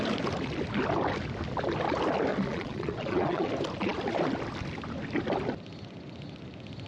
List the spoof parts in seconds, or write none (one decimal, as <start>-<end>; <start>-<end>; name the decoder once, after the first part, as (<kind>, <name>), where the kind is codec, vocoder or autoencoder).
2.3-3.5 (vocoder, Vocos)